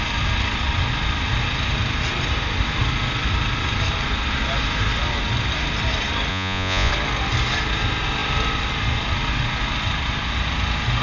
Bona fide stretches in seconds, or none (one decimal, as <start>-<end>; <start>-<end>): 0.0-6.3; 6.9-11.0